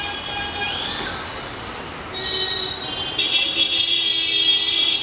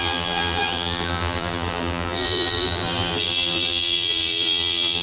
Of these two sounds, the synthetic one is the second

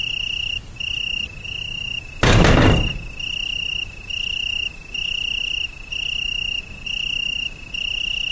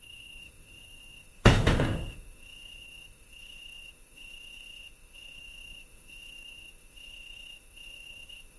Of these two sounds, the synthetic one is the second